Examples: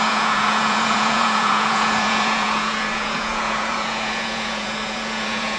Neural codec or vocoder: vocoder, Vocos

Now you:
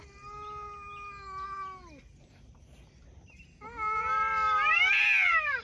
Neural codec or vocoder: none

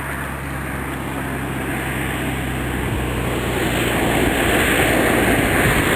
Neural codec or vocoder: none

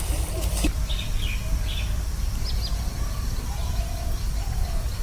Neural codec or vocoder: vocoder, BigVGAN v2